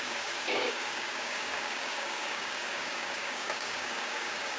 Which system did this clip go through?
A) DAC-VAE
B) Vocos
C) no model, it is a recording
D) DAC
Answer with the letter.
D